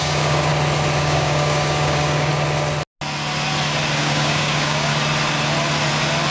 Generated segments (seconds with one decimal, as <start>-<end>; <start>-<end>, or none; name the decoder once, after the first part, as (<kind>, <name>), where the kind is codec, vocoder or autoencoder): 0.0-0.5 (codec, DAC); 1.0-2.3; 4.0-4.9